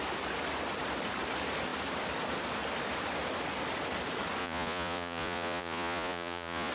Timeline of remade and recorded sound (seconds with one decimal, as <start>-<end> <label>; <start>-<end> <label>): 0.0-4.4 recorded; 4.4-6.7 remade